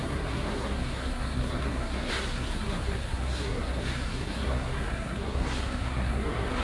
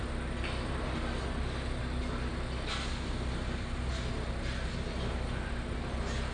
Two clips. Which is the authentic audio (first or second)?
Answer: second